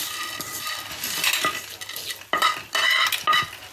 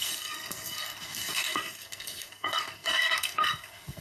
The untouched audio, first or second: first